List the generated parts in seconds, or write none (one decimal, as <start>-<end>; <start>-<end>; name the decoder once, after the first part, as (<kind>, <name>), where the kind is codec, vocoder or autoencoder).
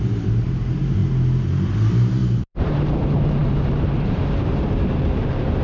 0.0-1.0 (vocoder, BigVGAN v2); 2.4-5.6